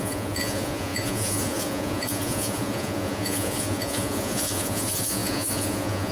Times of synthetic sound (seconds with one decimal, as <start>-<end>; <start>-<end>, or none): 0.0-6.1